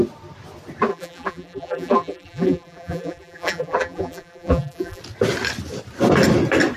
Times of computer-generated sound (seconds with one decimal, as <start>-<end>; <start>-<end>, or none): 0.9-5.0